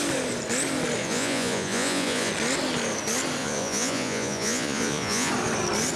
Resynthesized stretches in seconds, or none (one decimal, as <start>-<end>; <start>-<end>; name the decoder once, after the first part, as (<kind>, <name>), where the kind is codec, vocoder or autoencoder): 1.0-2.3 (vocoder, Vocos); 3.4-5.3